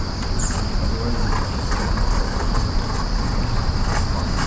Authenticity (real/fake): real